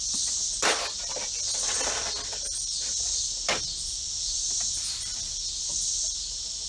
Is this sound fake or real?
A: real